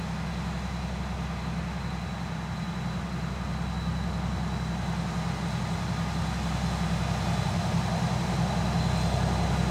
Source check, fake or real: real